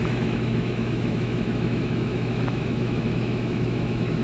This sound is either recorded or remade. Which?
remade